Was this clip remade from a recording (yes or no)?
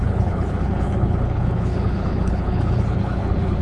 yes